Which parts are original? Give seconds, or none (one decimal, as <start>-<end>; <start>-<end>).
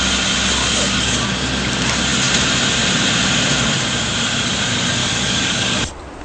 0.0-0.6; 1.2-5.0; 5.8-6.2